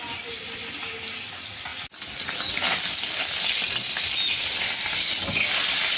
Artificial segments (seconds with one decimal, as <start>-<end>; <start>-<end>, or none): none